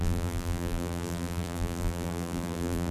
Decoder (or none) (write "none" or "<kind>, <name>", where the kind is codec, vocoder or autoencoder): vocoder, BigVGAN v2